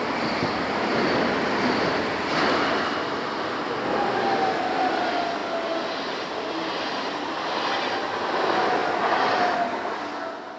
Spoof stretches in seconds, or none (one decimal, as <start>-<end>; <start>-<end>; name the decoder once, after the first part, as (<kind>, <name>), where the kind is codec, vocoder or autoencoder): none